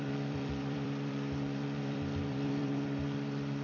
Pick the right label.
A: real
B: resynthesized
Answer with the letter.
B